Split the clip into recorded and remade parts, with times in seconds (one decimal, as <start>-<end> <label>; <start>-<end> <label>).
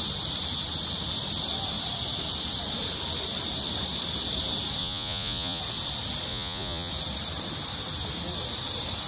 0.0-4.8 recorded; 4.8-5.6 remade; 5.6-6.3 recorded; 6.3-6.9 remade; 6.9-9.1 recorded